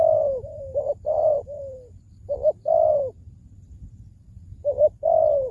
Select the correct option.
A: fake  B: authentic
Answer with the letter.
A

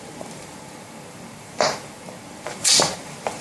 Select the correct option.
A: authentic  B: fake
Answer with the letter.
B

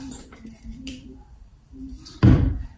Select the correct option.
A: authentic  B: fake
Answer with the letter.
B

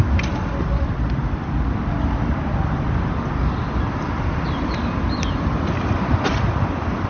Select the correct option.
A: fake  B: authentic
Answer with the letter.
A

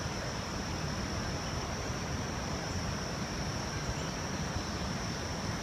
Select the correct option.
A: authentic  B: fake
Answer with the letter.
A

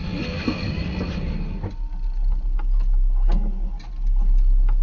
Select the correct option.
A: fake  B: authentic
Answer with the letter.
B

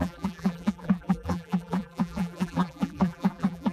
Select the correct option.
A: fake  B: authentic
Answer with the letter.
A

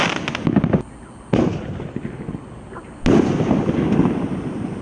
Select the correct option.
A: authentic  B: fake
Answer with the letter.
A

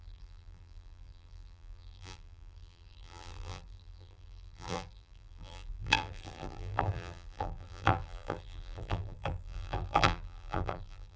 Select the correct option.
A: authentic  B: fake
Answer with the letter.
B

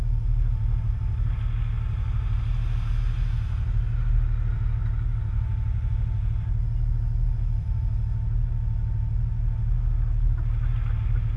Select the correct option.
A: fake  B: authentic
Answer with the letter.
B